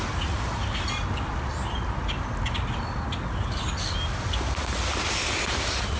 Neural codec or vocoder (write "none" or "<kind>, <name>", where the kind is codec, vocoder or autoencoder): none